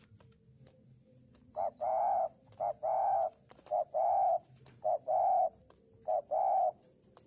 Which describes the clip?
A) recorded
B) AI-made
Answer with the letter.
A